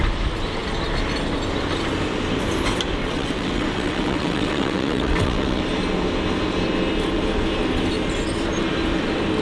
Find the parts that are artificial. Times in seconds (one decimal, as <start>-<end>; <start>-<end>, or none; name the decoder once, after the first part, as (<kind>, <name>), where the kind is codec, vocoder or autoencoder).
3.0-5.6 (vocoder, WaveNeXt)